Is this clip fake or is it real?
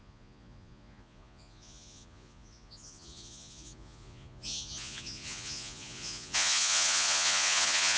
fake